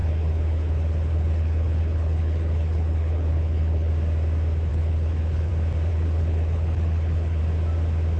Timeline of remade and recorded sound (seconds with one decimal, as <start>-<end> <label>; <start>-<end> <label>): 0.0-3.9 remade; 3.9-4.7 recorded; 4.7-5.5 remade; 5.5-5.9 recorded; 5.9-7.4 remade; 7.4-8.2 recorded